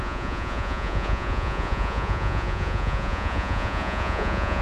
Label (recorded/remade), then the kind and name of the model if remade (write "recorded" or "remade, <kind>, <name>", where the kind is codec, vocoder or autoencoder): remade, vocoder, Vocos